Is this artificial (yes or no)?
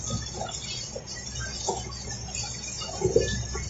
no